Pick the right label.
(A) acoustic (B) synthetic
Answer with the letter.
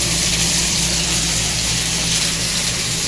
B